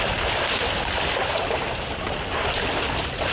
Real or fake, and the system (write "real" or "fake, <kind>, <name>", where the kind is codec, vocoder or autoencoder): real